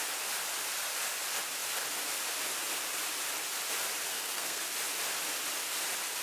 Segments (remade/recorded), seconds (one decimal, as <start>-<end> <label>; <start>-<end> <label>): 0.0-4.1 recorded; 4.1-4.7 remade; 4.7-6.2 recorded